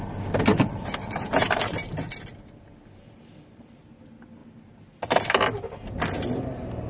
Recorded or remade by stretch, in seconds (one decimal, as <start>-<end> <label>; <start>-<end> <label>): 0.0-0.5 recorded; 0.5-2.1 remade; 2.1-6.9 recorded